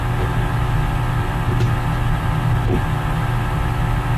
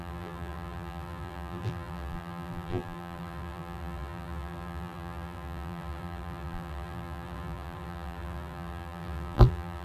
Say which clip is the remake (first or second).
second